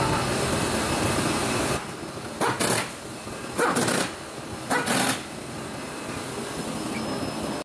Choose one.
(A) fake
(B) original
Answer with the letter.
B